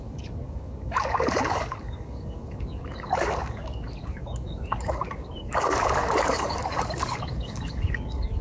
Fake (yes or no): yes